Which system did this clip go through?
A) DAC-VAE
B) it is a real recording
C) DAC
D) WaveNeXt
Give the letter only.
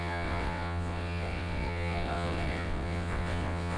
D